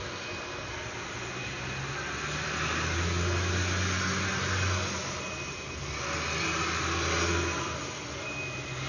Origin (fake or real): real